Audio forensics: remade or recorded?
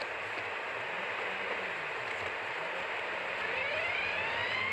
recorded